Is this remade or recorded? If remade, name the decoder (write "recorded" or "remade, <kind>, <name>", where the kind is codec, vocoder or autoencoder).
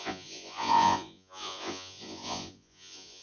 remade, vocoder, Vocos